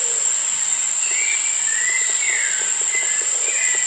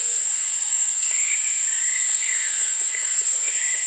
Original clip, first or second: first